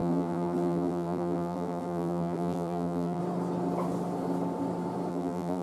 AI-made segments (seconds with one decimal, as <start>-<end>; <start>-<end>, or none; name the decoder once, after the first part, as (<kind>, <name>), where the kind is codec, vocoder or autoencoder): 0.0-3.2 (vocoder, BigVGAN v2); 5.1-5.6